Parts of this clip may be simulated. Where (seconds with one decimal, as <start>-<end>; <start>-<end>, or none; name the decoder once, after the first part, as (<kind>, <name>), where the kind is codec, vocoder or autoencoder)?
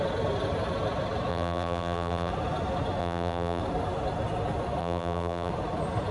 1.3-2.3 (vocoder, BigVGAN v2); 3.0-3.6; 4.8-5.5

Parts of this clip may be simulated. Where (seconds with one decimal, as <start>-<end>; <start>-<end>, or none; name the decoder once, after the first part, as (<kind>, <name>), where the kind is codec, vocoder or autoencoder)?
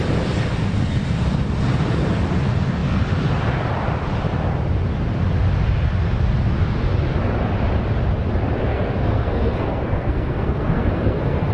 8.7-11.5 (codec, SNAC)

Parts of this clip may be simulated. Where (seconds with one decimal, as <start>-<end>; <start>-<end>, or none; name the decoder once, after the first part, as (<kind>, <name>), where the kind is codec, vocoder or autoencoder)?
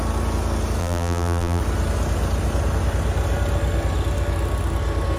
0.8-1.6 (vocoder, BigVGAN v2)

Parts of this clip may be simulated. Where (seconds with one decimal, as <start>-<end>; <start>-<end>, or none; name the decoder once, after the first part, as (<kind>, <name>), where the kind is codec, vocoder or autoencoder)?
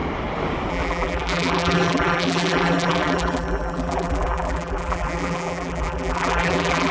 0.7-6.9 (vocoder, BigVGAN v2)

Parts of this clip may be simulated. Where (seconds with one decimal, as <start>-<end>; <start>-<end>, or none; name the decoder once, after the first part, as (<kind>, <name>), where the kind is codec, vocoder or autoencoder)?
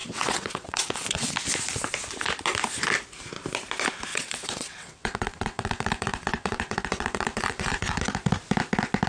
0.0-1.3 (vocoder, WaveNeXt); 4.1-8.0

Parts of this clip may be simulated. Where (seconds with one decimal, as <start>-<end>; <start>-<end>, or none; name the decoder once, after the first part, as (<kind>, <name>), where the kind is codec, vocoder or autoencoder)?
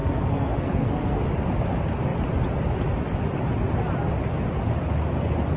0.0-1.3 (codec, SNAC)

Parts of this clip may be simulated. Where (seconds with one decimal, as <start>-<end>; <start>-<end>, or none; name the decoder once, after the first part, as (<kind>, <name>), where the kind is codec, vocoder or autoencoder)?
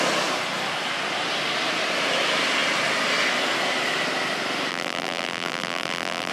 4.7-6.3 (vocoder, BigVGAN v2)